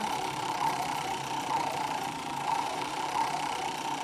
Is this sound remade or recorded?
remade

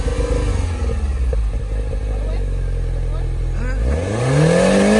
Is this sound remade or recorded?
recorded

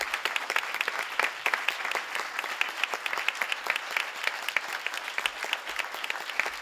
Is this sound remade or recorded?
recorded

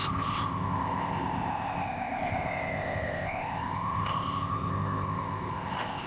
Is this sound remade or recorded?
remade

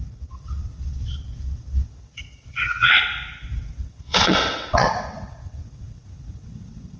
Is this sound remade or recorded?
remade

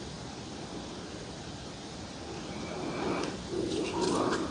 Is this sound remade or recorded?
recorded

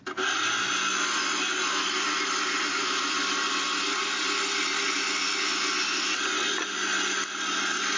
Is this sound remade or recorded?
recorded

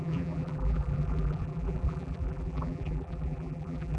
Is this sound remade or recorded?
remade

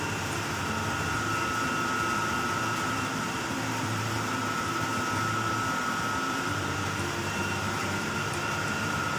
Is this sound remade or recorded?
remade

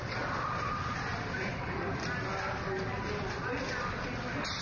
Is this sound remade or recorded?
recorded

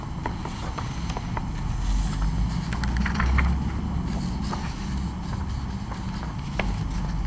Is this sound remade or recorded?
recorded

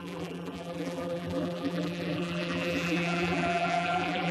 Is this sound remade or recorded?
remade